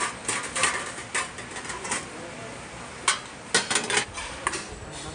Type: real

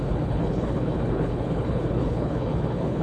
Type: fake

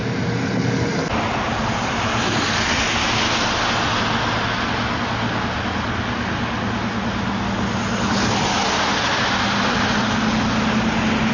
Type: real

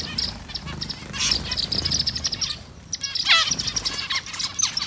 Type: real